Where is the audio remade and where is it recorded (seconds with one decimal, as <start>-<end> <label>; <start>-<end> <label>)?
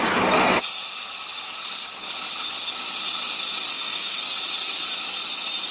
0.0-3.7 recorded; 3.7-4.2 remade; 4.2-5.7 recorded